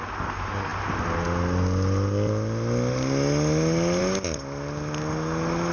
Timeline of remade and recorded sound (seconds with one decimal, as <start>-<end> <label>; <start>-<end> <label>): 0.0-5.7 recorded